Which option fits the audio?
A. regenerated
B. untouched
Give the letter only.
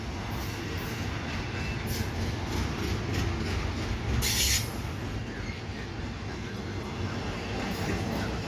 B